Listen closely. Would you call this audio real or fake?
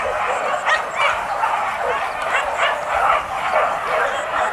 real